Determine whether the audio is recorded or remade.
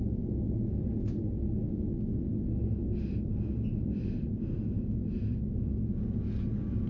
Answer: recorded